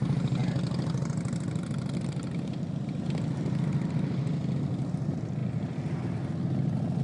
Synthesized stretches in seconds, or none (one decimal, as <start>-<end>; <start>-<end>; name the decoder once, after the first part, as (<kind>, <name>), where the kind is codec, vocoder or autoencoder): none